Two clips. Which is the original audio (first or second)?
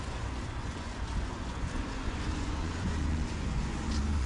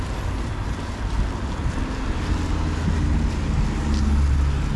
second